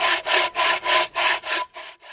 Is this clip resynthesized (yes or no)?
yes